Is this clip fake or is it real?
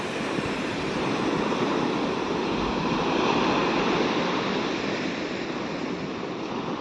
real